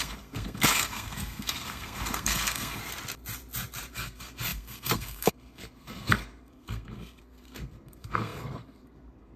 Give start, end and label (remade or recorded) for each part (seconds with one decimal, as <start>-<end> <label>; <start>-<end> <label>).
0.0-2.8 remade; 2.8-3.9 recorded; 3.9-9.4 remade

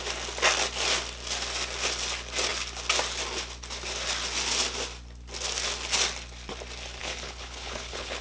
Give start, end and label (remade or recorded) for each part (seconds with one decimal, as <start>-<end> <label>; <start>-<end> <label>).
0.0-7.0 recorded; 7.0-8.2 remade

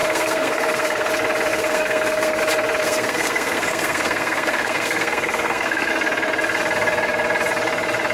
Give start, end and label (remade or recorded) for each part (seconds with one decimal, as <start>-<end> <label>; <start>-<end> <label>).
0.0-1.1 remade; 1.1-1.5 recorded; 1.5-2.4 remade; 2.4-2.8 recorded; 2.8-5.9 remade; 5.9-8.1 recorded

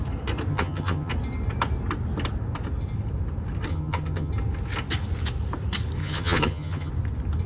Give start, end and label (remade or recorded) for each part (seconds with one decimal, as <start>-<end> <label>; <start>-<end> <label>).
0.0-0.5 recorded; 0.5-1.1 remade; 1.1-3.7 recorded; 3.7-4.3 remade; 4.3-6.0 recorded; 6.0-6.9 remade; 6.9-7.5 recorded

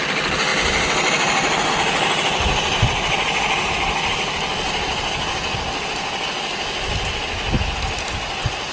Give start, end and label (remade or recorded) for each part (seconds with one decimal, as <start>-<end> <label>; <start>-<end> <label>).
0.0-8.7 recorded

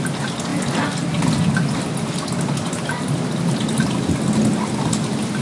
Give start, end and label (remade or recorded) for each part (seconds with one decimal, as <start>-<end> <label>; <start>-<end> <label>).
0.0-5.4 recorded